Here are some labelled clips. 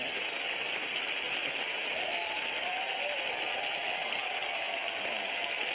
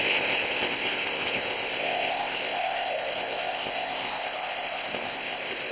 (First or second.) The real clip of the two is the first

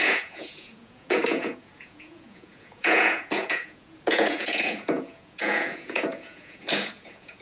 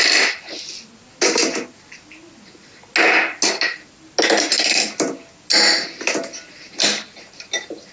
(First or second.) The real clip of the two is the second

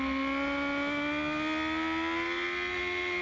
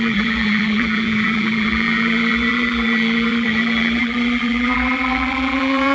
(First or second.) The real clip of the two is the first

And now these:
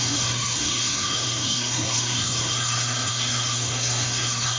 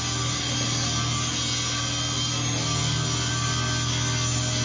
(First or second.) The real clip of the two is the second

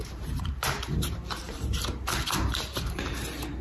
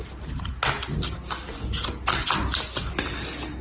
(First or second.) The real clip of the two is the second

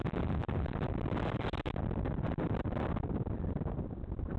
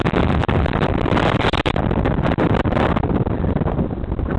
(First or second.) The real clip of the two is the first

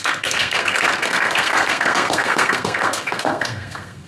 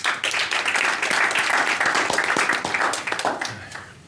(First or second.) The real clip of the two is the second